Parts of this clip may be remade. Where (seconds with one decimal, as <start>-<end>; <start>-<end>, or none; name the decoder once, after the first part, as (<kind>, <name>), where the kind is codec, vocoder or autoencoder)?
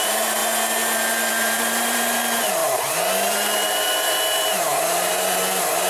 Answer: 0.0-0.4 (vocoder, BigVGAN v2); 1.3-5.9